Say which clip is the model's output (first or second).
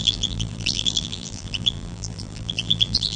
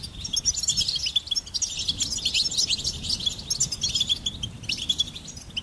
first